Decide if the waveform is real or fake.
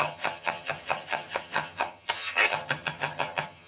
fake